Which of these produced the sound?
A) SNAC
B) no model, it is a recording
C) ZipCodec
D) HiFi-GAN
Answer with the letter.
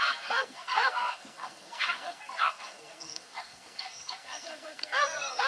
A